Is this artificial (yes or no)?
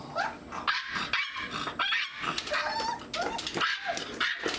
no